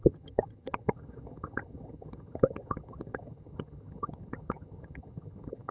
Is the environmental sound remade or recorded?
remade